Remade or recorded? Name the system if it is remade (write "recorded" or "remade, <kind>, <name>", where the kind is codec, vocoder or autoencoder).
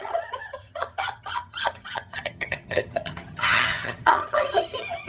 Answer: remade, vocoder, HiFi-GAN